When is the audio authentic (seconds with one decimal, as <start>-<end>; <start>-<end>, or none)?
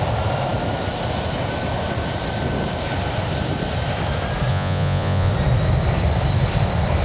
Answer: 0.0-4.5; 5.3-7.0